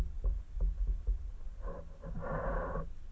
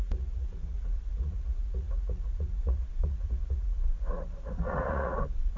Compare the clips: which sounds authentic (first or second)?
first